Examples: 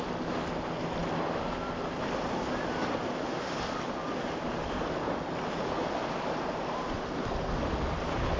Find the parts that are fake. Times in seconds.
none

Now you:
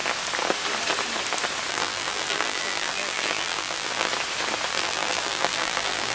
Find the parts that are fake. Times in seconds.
1.7-4.1 (vocoder, BigVGAN v2); 4.7-6.1

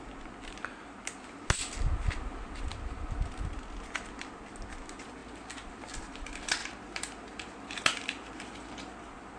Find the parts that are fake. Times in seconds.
6.6-8.4 (vocoder, BigVGAN v2)

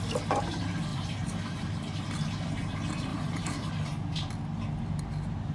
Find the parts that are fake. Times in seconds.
0.9-1.7 (vocoder, BigVGAN v2); 3.1-3.7